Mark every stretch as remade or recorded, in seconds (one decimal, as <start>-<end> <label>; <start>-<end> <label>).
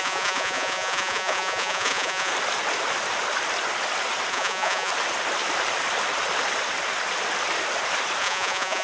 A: 0.0-2.3 remade; 2.3-4.3 recorded; 4.3-4.9 remade; 4.9-8.2 recorded; 8.2-8.8 remade